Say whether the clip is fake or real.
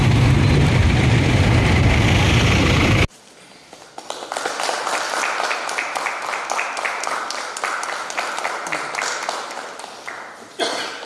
real